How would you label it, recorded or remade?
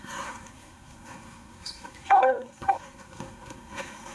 remade